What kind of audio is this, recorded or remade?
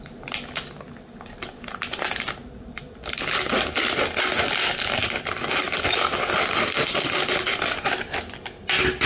recorded